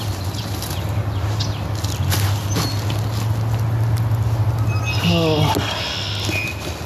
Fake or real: real